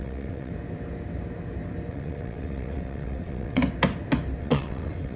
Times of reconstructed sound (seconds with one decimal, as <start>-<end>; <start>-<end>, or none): 0.0-0.5; 1.9-3.6; 4.4-5.2